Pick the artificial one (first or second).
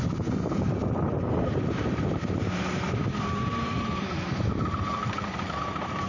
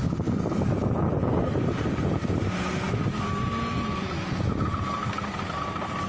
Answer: first